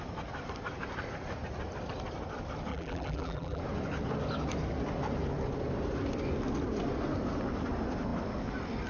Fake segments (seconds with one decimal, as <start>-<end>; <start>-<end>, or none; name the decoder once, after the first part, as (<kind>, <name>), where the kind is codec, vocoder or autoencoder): 2.7-3.6 (vocoder, BigVGAN v2)

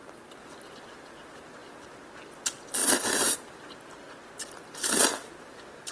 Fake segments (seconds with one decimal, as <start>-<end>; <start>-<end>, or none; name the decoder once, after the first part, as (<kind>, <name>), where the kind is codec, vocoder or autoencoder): 2.8-3.4 (vocoder, BigVGAN v2)

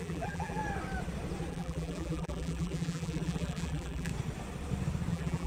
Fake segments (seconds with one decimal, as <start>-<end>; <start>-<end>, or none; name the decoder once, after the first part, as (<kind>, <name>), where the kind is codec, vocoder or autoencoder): 0.0-0.6 (vocoder, BigVGAN v2); 1.5-4.1; 5.1-5.5

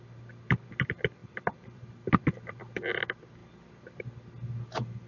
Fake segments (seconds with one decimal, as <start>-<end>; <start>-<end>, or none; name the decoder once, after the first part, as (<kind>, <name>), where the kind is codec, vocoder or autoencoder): 1.2-3.0 (vocoder, BigVGAN v2)